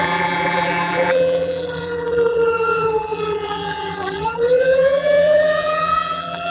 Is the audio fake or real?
fake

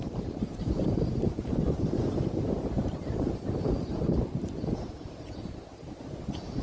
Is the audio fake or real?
fake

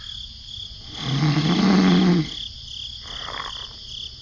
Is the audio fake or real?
real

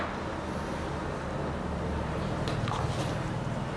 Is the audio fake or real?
real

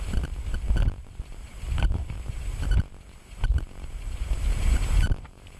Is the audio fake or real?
fake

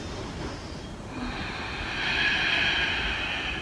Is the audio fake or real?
real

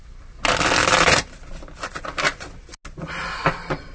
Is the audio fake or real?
real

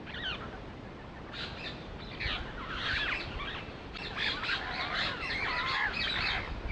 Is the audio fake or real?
fake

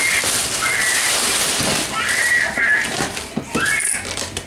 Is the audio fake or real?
real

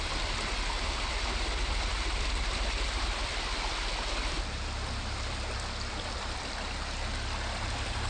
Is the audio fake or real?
fake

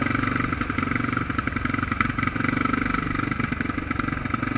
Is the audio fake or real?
real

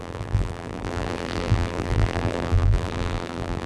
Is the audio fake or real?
fake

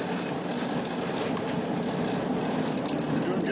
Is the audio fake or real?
real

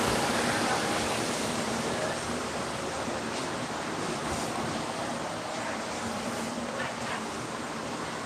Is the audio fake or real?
fake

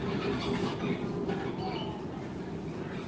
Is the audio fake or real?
real